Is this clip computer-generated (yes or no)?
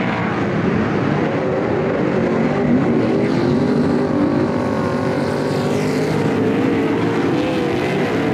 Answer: no